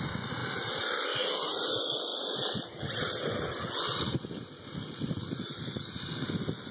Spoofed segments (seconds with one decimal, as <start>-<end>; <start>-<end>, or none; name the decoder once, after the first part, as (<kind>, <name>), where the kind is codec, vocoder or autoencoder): none